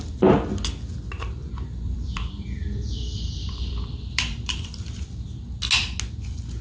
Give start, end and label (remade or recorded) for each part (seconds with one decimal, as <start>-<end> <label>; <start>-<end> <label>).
0.0-1.4 recorded; 1.4-5.4 remade; 5.4-6.6 recorded